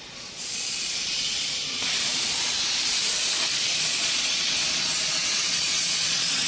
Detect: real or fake fake